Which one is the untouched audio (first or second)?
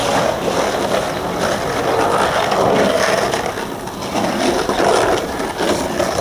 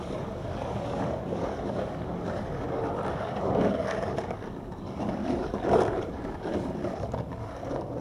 first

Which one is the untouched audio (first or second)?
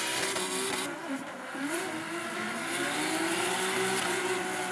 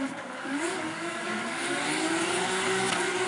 first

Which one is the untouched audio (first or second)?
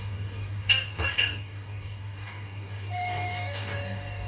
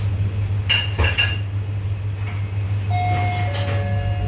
second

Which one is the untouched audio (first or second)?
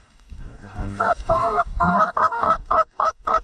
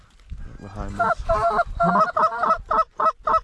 second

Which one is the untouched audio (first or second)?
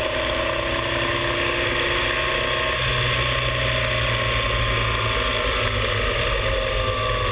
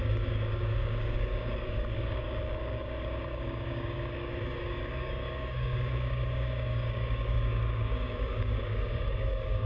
first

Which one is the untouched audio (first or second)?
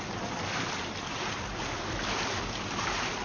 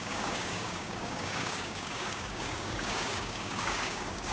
first